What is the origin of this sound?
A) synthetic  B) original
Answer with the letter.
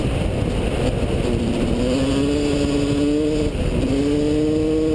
B